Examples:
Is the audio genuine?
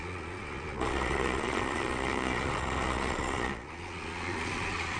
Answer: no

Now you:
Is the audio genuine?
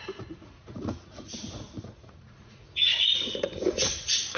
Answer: no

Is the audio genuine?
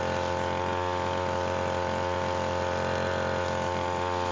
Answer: yes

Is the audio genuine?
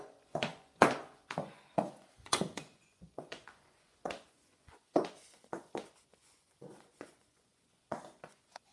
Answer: no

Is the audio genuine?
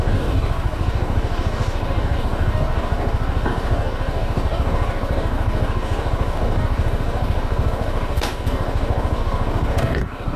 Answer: no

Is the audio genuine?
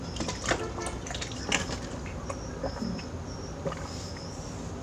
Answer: yes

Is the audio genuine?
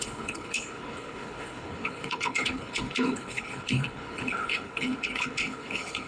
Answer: no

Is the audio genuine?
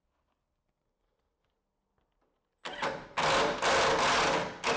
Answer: yes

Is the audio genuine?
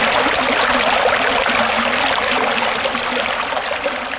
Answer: yes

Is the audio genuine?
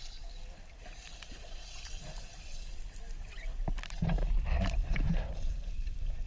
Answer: yes